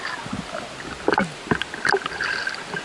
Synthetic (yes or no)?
no